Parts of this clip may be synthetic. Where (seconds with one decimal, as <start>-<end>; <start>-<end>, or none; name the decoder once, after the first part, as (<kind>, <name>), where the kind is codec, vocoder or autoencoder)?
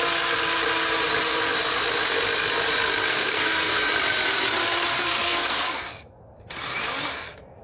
3.1-3.9 (codec, SNAC); 4.9-6.2